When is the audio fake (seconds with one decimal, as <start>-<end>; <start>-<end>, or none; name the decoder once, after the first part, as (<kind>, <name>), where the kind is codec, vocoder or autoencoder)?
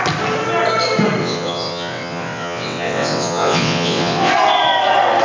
1.2-4.3 (vocoder, WaveNeXt)